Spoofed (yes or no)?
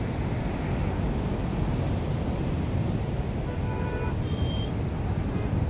no